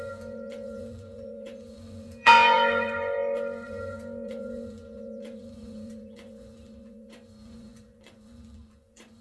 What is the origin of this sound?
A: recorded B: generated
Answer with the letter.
B